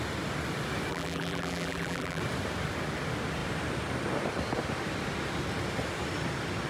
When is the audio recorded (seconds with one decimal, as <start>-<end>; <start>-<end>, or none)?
0.0-0.9; 2.2-6.7